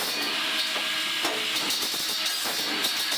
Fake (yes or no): no